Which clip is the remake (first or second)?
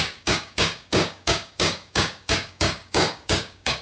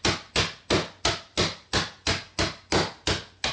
first